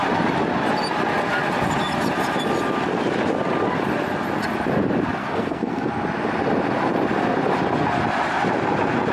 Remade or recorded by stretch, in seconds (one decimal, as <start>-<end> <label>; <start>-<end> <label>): 0.0-5.2 recorded; 5.2-5.9 remade; 5.9-9.1 recorded

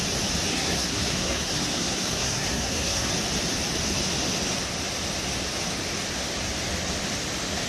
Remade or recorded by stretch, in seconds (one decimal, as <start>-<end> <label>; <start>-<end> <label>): 0.0-0.5 recorded; 0.5-3.1 remade; 3.1-7.7 recorded

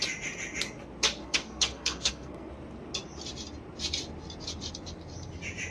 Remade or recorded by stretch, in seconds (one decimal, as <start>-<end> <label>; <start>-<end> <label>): 0.0-1.2 recorded; 1.2-2.5 remade; 2.5-5.7 recorded

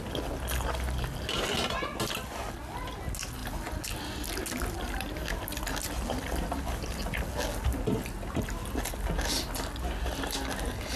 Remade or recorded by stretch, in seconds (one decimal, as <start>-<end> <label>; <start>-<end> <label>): 0.0-11.0 recorded